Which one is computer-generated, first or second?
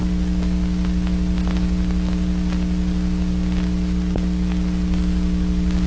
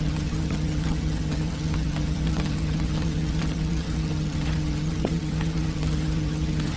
second